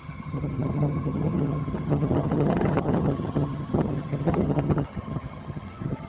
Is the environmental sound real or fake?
fake